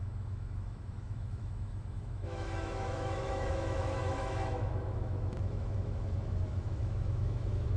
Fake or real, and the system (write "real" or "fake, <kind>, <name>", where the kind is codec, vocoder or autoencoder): fake, autoencoder, DAC-VAE